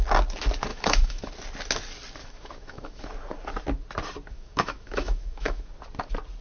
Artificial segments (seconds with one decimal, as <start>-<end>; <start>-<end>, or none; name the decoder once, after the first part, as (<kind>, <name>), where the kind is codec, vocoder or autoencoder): 0.7-1.2 (autoencoder, DAC-VAE); 2.2-3.0; 4.3-5.7